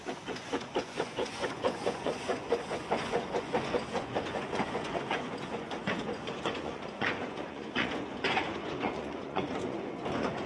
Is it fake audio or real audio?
fake